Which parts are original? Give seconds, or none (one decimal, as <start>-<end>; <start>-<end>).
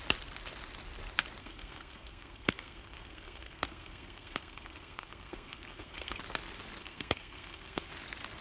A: 0.0-1.4; 6.2-6.8; 7.9-8.4